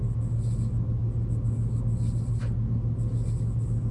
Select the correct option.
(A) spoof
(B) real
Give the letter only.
B